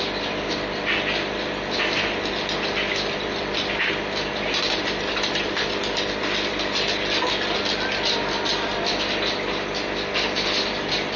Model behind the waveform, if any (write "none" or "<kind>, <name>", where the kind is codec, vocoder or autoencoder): none